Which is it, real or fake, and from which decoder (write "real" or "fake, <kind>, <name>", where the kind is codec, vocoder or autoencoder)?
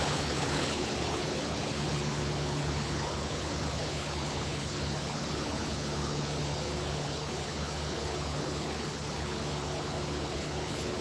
fake, codec, HILCodec